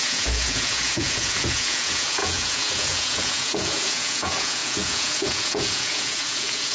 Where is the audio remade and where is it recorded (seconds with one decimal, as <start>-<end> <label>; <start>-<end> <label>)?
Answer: 0.0-6.7 remade